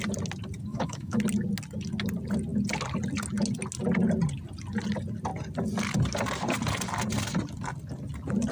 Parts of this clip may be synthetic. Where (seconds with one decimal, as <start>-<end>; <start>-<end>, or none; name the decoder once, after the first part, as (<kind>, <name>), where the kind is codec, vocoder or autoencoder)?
0.7-1.2 (autoencoder, DAC-VAE)